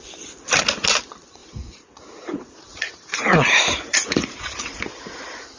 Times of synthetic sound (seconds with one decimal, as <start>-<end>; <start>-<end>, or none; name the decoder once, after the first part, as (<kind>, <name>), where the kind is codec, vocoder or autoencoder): 1.4-4.8 (vocoder, Vocos)